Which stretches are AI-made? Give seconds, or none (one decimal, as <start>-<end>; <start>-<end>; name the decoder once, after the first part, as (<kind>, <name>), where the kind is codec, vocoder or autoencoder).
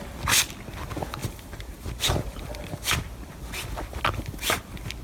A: 1.2-3.4 (vocoder, BigVGAN v2)